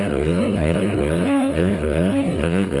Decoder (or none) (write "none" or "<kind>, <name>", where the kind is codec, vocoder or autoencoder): codec, SNAC